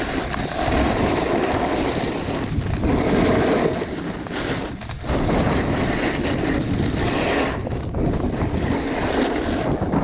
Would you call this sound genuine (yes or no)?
yes